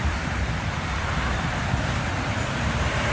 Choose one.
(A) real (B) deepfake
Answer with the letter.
B